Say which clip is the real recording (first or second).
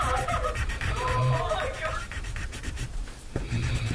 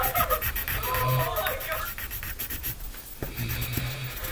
second